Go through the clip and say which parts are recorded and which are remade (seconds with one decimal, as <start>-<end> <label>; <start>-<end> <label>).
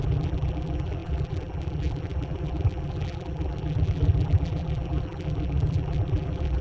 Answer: 0.0-6.6 remade